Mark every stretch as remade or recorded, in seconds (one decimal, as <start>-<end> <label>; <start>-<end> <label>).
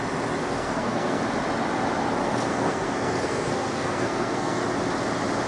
0.0-0.4 recorded; 0.4-1.2 remade; 1.2-2.2 recorded; 2.2-4.6 remade; 4.6-5.5 recorded